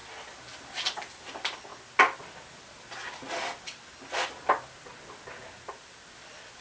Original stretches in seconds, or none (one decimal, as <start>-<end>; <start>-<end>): 0.0-6.6